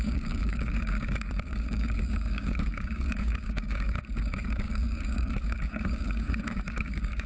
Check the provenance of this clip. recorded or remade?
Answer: remade